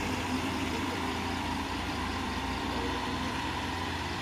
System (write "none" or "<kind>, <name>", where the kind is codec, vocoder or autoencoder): vocoder, BigVGAN v2